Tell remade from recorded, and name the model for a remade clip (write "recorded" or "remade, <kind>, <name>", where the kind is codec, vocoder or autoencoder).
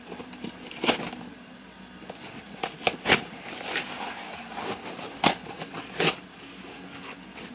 recorded